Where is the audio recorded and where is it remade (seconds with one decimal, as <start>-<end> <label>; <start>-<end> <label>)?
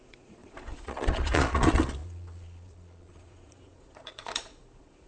0.0-5.1 remade